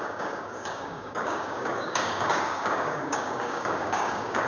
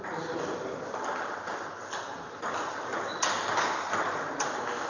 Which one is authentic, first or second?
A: second